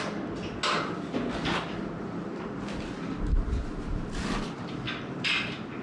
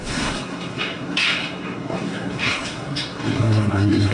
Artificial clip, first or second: second